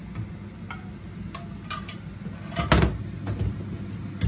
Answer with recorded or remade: recorded